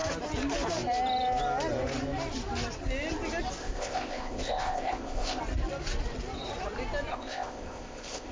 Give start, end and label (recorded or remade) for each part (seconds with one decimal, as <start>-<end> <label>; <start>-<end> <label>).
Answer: 0.0-3.6 recorded; 3.6-5.4 remade; 5.4-7.1 recorded; 7.1-8.3 remade